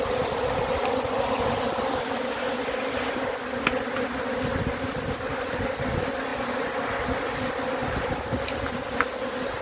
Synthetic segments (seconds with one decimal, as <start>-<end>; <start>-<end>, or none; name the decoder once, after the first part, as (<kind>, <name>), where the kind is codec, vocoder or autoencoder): none